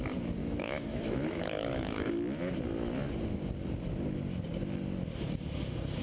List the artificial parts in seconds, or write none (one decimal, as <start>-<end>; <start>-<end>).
0.4-2.4